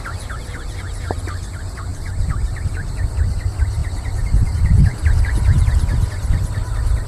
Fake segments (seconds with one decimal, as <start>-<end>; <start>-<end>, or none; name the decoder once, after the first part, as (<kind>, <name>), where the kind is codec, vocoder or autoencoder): 0.0-5.9 (vocoder, BigVGAN v2)